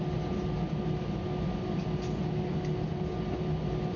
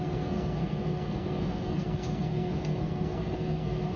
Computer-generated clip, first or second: second